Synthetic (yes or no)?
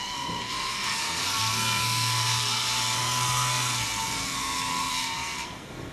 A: yes